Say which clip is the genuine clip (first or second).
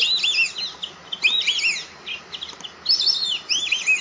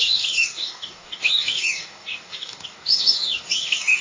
first